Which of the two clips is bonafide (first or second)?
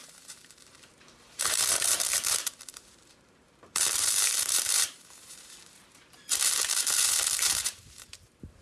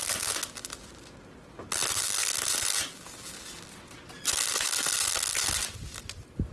second